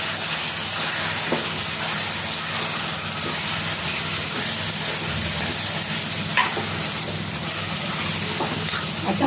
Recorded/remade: recorded